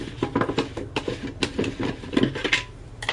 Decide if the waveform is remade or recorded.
recorded